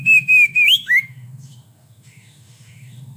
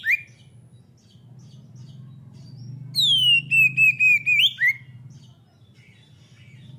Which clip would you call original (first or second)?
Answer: second